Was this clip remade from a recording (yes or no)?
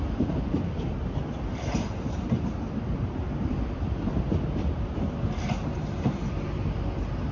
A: no